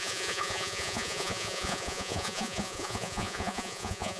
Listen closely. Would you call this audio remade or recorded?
remade